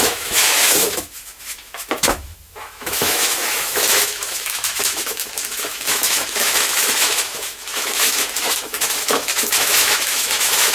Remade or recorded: remade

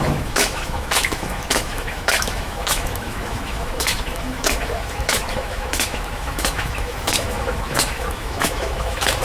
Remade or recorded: remade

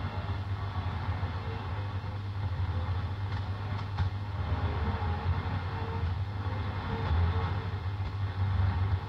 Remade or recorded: recorded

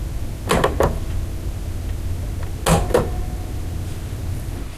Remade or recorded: recorded